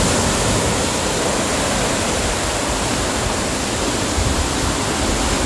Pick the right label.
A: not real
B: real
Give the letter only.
B